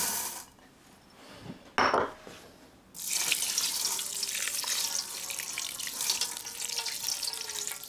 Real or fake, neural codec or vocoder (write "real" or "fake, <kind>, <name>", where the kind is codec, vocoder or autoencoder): real